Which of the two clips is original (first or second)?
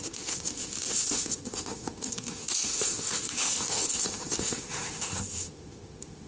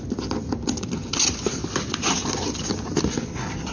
second